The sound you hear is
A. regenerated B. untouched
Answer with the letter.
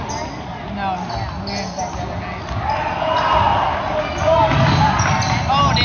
B